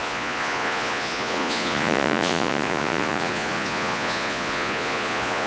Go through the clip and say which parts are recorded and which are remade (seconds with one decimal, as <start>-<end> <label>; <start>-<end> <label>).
0.0-5.5 remade